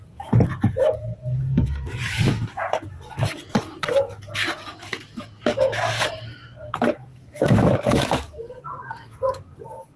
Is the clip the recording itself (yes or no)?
no